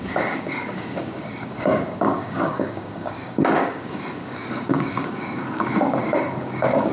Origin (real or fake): fake